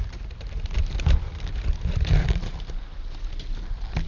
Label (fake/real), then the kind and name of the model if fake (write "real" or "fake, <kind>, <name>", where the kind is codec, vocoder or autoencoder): fake, vocoder, BigVGAN v2